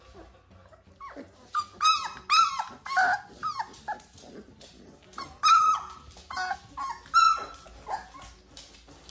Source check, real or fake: real